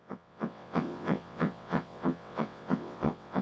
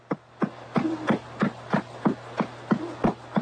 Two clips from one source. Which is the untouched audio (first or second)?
second